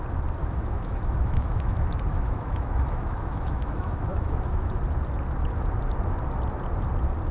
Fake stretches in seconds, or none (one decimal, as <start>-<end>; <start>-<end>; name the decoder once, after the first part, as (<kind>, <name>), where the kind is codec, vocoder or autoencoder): 0.4-4.7 (autoencoder, DAC-VAE)

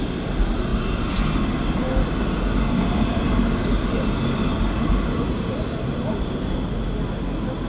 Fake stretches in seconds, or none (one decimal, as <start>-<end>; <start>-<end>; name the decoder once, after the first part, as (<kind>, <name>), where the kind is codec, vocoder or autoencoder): none

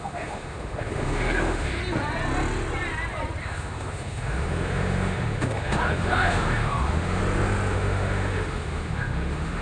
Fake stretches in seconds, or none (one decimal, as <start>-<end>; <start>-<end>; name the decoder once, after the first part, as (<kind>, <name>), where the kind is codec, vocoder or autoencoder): 0.0-1.8 (autoencoder, DAC-VAE); 3.4-7.2; 7.7-9.6

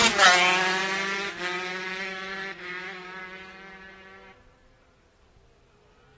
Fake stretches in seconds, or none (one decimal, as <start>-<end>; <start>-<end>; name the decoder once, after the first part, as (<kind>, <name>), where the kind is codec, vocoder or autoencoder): 1.7-3.2 (autoencoder, DAC-VAE)

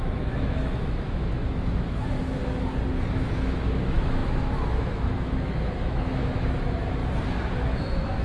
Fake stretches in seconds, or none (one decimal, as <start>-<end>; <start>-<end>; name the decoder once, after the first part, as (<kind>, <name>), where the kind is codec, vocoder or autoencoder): 0.0-2.4 (autoencoder, DAC-VAE); 3.1-7.0; 7.6-8.2

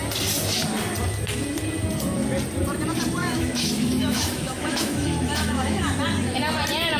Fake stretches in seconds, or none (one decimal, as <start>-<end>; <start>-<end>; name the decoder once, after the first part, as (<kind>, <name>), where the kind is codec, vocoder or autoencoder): 3.2-5.8 (autoencoder, DAC-VAE)

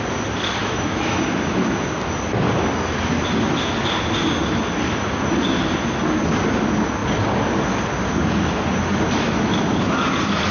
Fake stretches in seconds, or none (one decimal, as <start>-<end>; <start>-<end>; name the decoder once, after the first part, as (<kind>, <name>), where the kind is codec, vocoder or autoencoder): 0.6-1.2 (autoencoder, DAC-VAE)

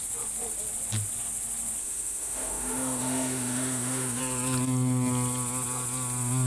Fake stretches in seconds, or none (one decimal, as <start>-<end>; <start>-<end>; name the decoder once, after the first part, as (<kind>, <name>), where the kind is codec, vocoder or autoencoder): 1.8-4.2 (autoencoder, DAC-VAE)